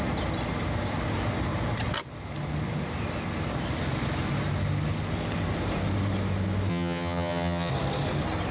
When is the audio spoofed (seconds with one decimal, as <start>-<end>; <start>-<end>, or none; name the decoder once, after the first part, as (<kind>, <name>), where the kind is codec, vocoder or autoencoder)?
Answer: 6.7-7.7 (vocoder, HiFi-GAN)